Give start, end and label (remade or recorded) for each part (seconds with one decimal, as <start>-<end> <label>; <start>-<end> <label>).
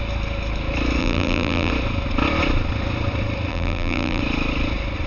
0.0-1.0 recorded; 1.0-1.7 remade; 1.7-3.5 recorded; 3.5-4.2 remade; 4.2-5.1 recorded